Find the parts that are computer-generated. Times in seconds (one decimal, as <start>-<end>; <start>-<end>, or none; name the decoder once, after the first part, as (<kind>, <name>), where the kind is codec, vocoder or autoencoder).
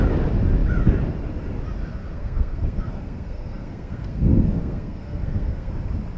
2.0-5.7 (codec, SNAC)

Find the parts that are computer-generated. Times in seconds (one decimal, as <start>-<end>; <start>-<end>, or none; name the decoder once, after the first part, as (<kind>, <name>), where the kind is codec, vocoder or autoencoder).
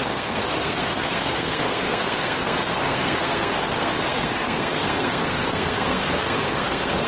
0.0-7.1 (codec, SNAC)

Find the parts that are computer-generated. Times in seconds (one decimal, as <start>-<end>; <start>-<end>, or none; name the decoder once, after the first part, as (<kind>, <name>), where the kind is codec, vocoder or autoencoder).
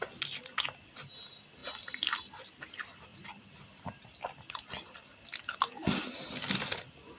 none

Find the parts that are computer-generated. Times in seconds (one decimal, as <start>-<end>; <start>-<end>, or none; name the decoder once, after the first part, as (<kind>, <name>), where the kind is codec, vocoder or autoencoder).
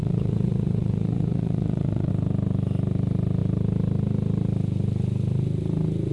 0.0-2.1 (vocoder, Vocos)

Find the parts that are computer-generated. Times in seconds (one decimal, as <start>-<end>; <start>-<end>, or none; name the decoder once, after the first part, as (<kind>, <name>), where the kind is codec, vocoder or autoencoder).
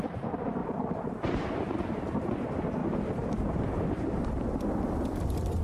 0.6-1.5 (vocoder, BigVGAN v2); 2.8-4.3